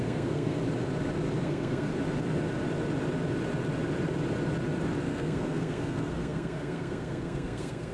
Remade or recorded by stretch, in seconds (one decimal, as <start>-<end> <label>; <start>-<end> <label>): 0.0-0.6 remade; 0.6-1.4 recorded; 1.4-1.9 remade; 1.9-5.0 recorded; 5.0-7.9 remade